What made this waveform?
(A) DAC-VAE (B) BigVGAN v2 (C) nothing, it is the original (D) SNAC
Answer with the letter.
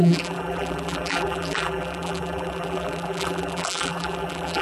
B